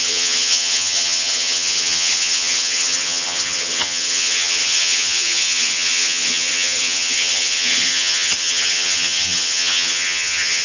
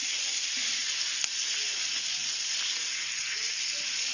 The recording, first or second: second